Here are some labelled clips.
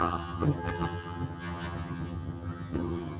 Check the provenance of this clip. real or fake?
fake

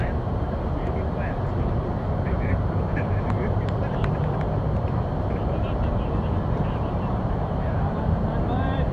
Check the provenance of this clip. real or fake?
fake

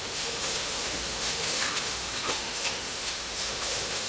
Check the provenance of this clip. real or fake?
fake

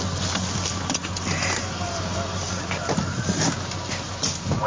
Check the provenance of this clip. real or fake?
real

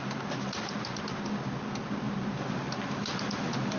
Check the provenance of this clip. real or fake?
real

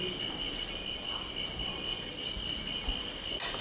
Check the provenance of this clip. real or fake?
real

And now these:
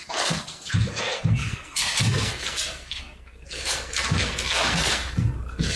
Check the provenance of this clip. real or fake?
fake